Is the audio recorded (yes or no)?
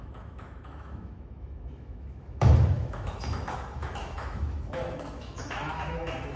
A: no